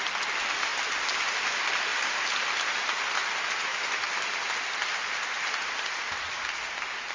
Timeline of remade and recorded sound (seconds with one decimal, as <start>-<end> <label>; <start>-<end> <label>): 0.0-7.1 recorded